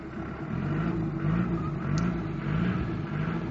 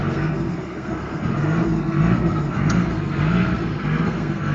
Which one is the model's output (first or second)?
second